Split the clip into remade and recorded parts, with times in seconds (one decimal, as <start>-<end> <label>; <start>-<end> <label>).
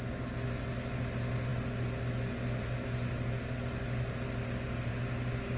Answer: 0.0-5.6 recorded